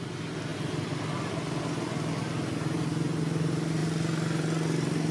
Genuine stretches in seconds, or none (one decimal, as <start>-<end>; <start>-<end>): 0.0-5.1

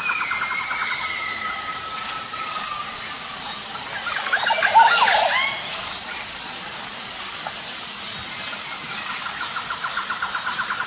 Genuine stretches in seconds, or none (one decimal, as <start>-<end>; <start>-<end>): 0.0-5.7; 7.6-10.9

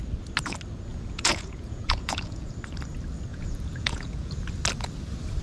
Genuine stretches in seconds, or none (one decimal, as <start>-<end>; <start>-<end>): 0.0-0.9; 2.5-3.3; 4.4-5.4

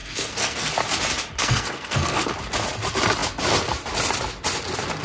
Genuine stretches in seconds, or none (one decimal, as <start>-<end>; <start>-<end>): 0.7-1.4; 2.3-5.0